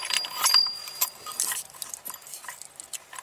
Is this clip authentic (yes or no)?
yes